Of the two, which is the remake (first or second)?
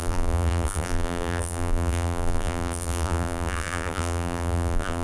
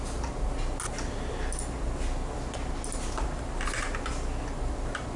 first